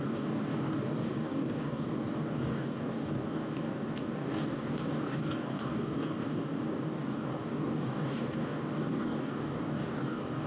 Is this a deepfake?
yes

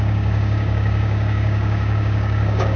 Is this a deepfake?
yes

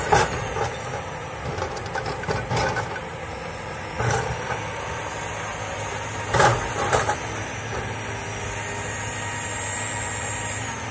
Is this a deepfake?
no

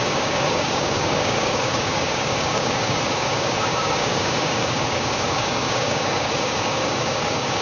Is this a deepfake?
yes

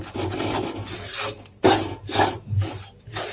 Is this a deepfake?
no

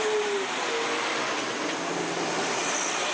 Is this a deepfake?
no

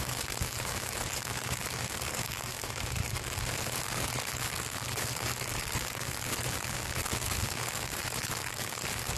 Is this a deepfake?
yes